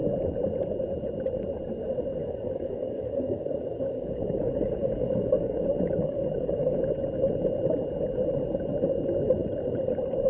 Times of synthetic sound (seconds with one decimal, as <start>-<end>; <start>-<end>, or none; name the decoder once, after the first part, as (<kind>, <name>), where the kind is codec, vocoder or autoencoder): 2.2-6.8 (codec, DAC)